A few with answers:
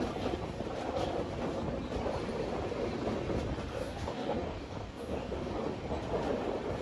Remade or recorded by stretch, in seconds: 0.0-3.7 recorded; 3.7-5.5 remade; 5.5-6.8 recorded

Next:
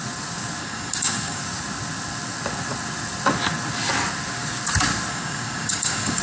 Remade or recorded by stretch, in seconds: 0.0-0.6 recorded; 0.6-1.4 remade; 1.4-5.1 recorded; 5.1-6.2 remade

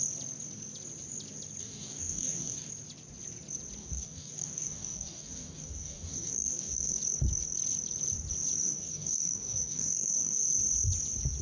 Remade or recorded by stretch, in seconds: 0.0-1.6 recorded; 1.6-2.7 remade; 2.7-3.8 recorded; 3.8-7.0 remade; 7.0-8.6 recorded; 8.6-10.5 remade; 10.5-11.4 recorded

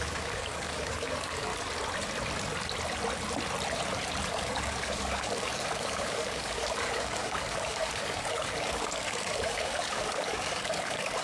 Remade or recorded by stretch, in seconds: 0.0-1.5 remade; 1.5-4.3 recorded; 4.3-11.2 remade

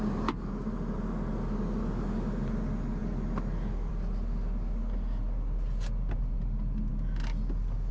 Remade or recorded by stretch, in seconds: 0.0-7.9 recorded

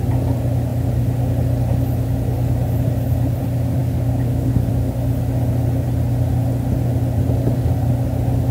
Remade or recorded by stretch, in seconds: 0.0-3.8 recorded; 3.8-4.7 remade; 4.7-8.5 recorded

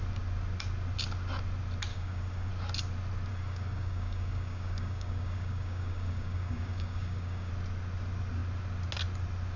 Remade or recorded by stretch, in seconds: 0.0-1.9 recorded; 1.9-2.5 remade; 2.5-3.3 recorded; 3.3-7.5 remade; 7.5-9.6 recorded

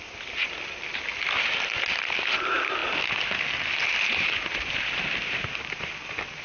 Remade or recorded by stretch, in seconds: 0.0-6.4 recorded